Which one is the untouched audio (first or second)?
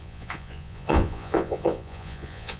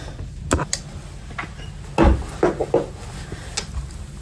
second